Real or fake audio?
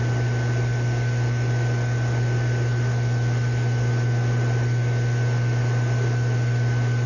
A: real